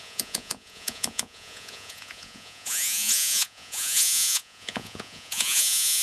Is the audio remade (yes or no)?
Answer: yes